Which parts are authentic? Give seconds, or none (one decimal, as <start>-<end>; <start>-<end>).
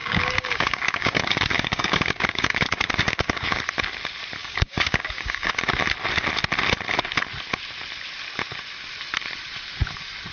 3.6-4.4; 5.5-10.3